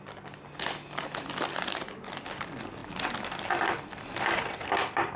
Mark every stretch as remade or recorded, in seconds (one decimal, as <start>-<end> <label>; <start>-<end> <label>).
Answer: 0.0-2.8 recorded; 2.8-4.1 remade; 4.1-5.2 recorded